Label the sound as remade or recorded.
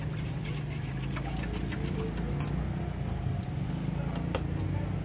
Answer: recorded